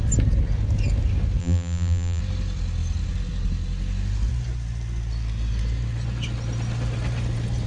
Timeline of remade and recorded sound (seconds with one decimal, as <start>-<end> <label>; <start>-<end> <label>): 0.0-1.4 recorded; 1.4-2.2 remade; 2.2-7.7 recorded